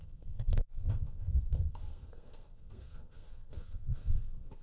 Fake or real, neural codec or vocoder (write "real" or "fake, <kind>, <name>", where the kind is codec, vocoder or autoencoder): fake, codec, SNAC